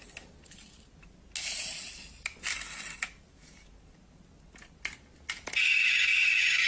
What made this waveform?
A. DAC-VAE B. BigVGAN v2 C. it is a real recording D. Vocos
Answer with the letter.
C